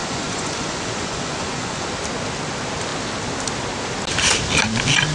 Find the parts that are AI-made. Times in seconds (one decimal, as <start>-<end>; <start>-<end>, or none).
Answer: 0.0-1.9